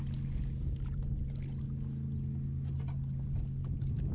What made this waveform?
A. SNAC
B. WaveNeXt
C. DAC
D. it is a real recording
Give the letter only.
D